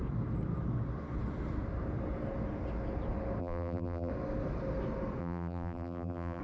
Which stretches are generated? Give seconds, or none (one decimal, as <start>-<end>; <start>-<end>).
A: 3.4-4.1; 5.2-6.4